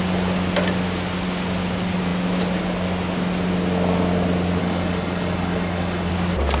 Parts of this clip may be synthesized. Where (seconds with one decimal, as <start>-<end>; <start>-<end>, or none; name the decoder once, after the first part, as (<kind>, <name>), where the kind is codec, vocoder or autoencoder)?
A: 4.6-6.1 (codec, DAC)

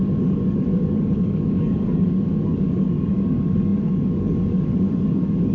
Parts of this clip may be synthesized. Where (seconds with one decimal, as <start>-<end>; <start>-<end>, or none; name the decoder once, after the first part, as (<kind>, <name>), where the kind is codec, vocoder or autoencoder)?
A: 0.0-5.5 (codec, DAC)

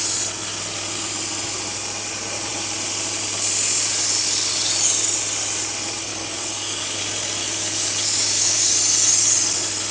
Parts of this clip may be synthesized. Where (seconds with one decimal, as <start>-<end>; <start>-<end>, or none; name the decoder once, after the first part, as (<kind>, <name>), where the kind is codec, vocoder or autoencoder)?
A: 6.1-7.0 (codec, DAC); 7.4-8.7

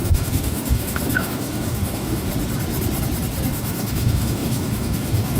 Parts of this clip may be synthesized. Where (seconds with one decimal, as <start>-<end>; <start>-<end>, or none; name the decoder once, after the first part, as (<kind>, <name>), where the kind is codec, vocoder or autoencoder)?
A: 0.0-2.3 (codec, DAC); 3.5-5.4

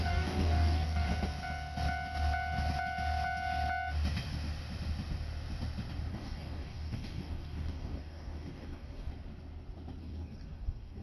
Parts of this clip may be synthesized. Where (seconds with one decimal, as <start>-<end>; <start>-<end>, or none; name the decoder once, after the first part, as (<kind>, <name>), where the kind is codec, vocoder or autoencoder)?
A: 0.0-1.1 (codec, DAC); 6.1-9.1; 10.0-11.0